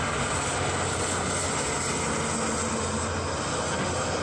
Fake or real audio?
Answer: real